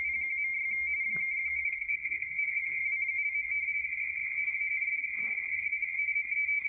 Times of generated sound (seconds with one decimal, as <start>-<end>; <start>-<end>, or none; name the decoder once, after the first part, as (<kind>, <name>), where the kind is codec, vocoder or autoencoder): 1.5-2.8 (codec, SNAC)